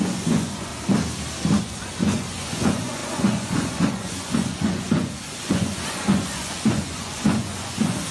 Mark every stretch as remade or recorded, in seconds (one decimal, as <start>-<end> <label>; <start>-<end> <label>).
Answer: 0.0-0.7 remade; 0.7-1.6 recorded; 1.6-8.1 remade